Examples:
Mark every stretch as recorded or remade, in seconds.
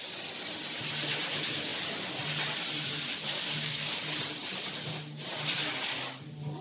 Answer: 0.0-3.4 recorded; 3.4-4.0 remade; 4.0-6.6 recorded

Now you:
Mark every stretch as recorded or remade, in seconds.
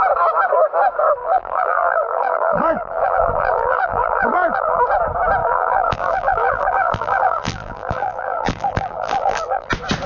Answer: 0.0-1.2 recorded; 1.2-4.8 remade; 4.8-5.4 recorded; 5.4-9.7 remade; 9.7-10.1 recorded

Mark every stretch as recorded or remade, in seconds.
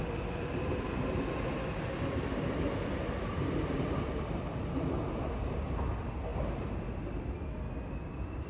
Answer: 0.0-8.5 recorded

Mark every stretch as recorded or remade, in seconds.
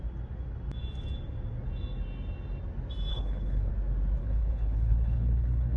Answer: 0.0-3.1 recorded; 3.1-3.7 remade; 3.7-4.2 recorded; 4.2-5.8 remade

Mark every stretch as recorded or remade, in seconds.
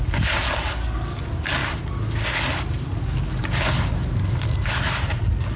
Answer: 0.0-5.6 recorded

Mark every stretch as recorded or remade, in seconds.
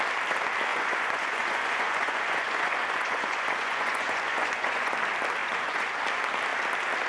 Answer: 0.0-0.7 recorded; 0.7-4.9 remade; 4.9-5.4 recorded; 5.4-6.0 remade; 6.0-7.1 recorded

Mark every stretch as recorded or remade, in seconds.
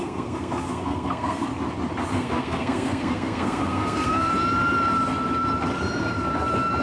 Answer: 0.0-1.5 remade; 1.5-2.1 recorded; 2.1-4.3 remade; 4.3-6.8 recorded